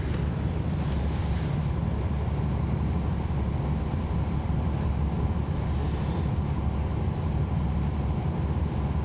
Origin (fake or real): real